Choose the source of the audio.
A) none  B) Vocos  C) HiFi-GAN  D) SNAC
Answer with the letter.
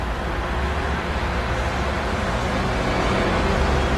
A